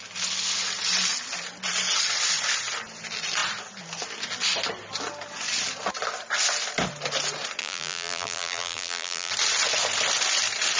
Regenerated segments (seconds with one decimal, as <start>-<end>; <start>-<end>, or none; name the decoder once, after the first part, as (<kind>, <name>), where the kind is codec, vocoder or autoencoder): 7.6-9.3 (vocoder, BigVGAN v2)